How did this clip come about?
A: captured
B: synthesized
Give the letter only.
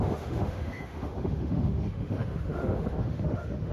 B